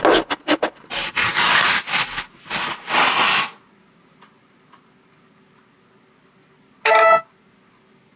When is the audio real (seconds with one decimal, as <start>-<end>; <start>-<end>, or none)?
0.0-8.2